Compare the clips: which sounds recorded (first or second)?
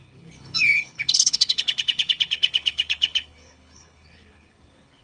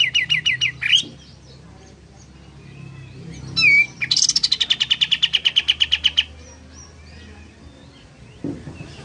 second